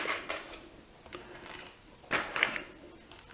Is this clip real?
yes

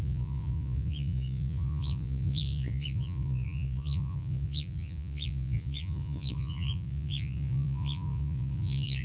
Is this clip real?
no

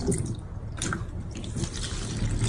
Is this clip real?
yes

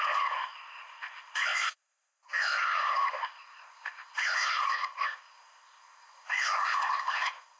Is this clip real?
no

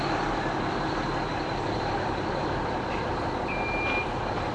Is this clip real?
yes